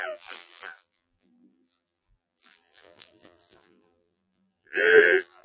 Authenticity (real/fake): fake